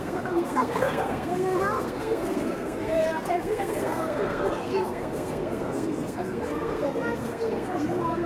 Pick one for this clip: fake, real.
fake